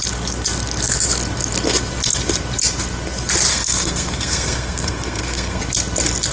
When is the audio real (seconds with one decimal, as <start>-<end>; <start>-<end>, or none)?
0.0-3.5; 5.6-6.3